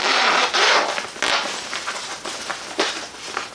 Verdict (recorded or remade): recorded